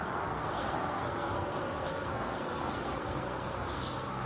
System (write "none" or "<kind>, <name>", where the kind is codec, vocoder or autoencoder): codec, SNAC